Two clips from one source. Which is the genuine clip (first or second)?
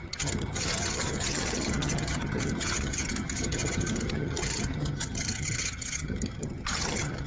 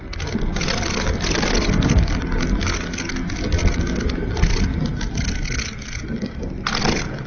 second